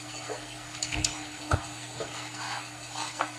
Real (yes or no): no